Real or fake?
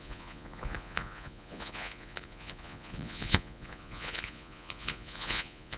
fake